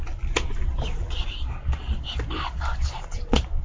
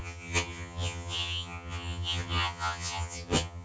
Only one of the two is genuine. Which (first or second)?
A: first